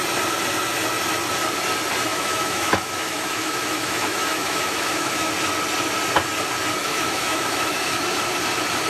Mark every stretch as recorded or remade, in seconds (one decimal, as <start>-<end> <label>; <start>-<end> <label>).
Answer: 0.0-2.1 recorded; 2.1-5.3 remade; 5.3-6.8 recorded; 6.8-8.0 remade; 8.0-8.9 recorded